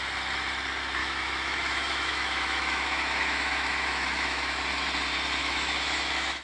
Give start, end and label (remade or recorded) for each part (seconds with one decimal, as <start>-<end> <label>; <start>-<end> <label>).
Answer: 0.0-1.0 recorded; 1.0-4.6 remade; 4.6-5.4 recorded; 5.4-6.4 remade